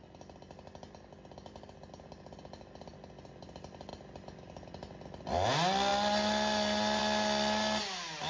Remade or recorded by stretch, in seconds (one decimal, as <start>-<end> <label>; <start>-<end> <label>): 0.0-8.3 recorded